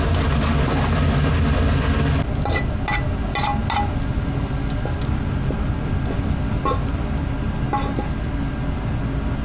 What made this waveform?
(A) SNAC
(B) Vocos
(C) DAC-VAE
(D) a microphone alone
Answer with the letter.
D